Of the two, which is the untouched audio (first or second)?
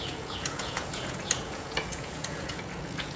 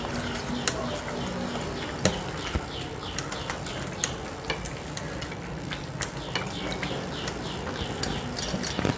second